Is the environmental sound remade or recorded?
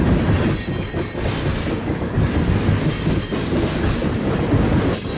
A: recorded